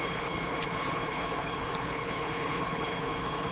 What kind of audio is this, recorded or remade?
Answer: remade